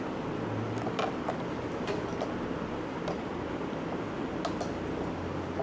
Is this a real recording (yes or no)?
yes